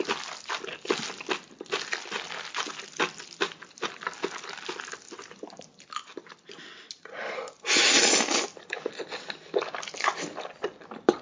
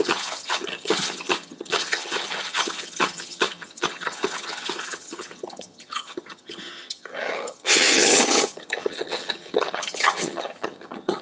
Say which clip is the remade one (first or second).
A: second